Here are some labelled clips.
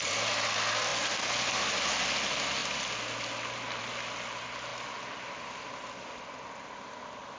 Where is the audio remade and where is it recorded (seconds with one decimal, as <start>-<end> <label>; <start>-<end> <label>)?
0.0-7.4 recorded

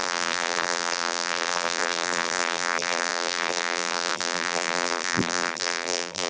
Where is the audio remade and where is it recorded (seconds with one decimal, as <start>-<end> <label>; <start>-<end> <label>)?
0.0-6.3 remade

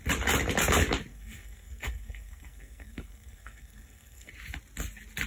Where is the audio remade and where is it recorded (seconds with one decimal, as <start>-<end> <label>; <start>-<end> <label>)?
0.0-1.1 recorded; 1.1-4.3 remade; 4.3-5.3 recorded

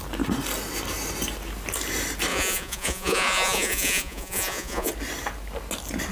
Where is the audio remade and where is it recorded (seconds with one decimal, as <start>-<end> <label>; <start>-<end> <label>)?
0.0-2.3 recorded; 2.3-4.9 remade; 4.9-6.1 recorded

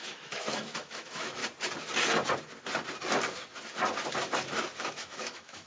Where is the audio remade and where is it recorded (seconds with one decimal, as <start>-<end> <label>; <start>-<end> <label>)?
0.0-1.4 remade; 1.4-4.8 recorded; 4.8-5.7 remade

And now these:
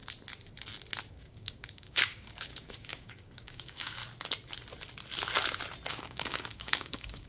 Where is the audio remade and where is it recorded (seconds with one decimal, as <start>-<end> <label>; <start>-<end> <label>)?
0.0-1.1 recorded; 1.1-4.0 remade; 4.0-5.9 recorded; 5.9-7.3 remade

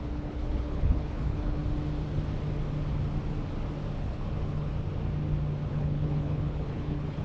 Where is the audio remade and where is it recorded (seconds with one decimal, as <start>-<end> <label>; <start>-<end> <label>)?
0.0-1.6 remade; 1.6-4.0 recorded; 4.0-4.7 remade; 4.7-5.7 recorded; 5.7-7.2 remade

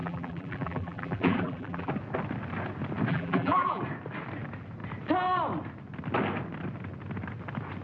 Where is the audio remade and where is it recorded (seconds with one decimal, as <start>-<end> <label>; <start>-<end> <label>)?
0.0-1.9 remade; 1.9-3.1 recorded; 3.1-3.8 remade; 3.8-7.8 recorded